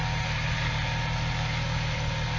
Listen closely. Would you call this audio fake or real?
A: real